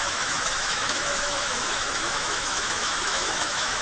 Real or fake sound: fake